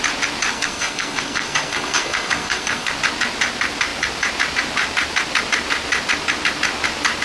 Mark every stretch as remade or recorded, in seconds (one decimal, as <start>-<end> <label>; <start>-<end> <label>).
0.0-0.5 recorded; 0.5-2.9 remade; 2.9-7.2 recorded